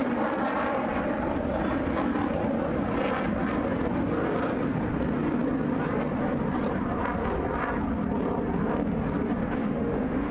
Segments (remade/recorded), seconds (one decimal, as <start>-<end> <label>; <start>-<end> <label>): 0.0-9.6 recorded; 9.6-10.3 remade